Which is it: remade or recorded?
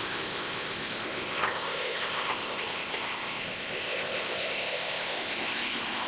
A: remade